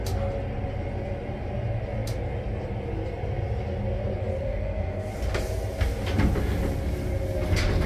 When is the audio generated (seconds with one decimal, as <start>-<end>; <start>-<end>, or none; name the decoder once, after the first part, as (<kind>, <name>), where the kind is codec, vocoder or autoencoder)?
4.4-5.1 (codec, SNAC)